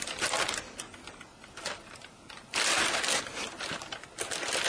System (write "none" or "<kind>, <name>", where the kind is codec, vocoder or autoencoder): none